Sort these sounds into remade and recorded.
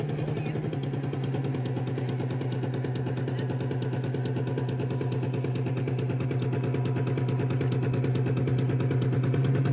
recorded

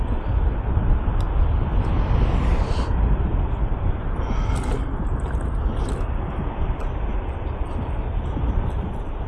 recorded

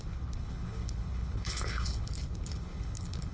remade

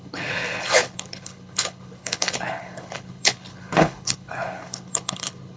remade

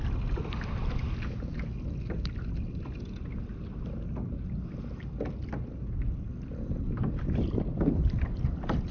recorded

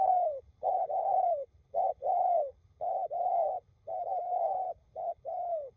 remade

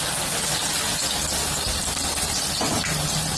recorded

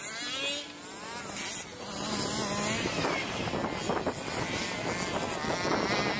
recorded